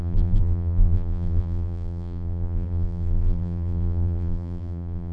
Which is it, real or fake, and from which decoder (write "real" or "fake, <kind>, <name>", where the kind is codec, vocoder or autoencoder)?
fake, vocoder, BigVGAN v2